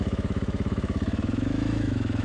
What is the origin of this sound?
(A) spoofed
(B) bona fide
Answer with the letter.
A